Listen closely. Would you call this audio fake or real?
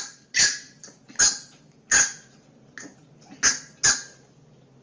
real